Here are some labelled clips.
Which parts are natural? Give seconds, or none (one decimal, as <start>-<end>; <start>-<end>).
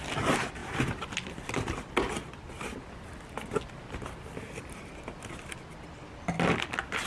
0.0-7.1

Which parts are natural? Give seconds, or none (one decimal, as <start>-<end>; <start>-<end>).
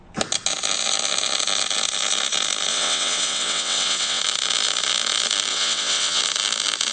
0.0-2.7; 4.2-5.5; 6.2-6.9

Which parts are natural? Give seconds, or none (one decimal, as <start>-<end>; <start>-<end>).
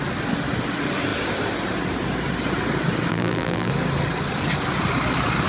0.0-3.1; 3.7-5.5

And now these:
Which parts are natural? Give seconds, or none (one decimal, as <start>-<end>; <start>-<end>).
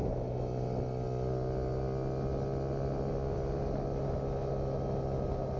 0.0-5.6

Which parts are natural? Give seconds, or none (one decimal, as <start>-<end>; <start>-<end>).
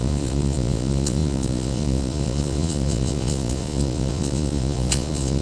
none